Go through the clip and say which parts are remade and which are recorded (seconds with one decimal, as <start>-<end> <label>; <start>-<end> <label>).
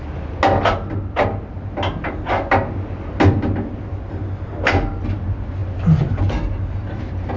0.0-7.4 recorded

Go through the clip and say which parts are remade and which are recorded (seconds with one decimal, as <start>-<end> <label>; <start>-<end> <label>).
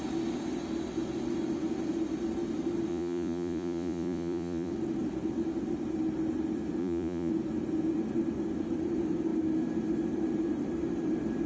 0.0-2.9 recorded; 2.9-4.7 remade; 4.7-6.8 recorded; 6.8-7.3 remade; 7.3-11.5 recorded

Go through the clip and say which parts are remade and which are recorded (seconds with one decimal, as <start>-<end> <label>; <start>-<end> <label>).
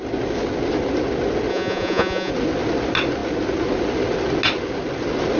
0.0-1.5 recorded; 1.5-2.3 remade; 2.3-5.4 recorded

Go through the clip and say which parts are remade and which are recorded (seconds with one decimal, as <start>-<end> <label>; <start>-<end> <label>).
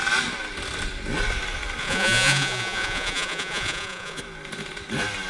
0.0-1.8 recorded; 1.8-4.2 remade; 4.2-5.3 recorded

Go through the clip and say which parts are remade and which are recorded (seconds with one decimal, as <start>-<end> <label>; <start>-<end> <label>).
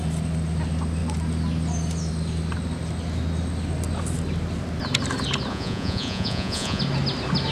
0.0-5.5 recorded; 5.5-6.8 remade; 6.8-7.5 recorded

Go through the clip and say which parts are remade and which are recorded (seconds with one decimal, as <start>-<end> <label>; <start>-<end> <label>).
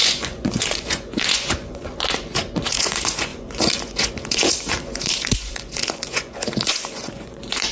0.0-7.7 remade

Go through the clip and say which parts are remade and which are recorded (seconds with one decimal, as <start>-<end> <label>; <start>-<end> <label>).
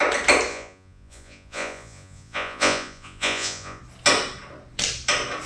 0.0-0.5 recorded; 0.5-3.8 remade; 3.8-5.5 recorded